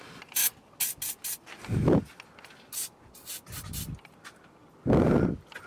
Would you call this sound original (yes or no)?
yes